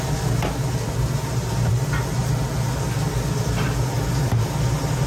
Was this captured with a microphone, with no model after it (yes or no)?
yes